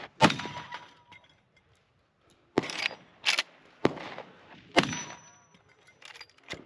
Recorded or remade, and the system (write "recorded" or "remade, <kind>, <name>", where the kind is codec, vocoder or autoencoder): recorded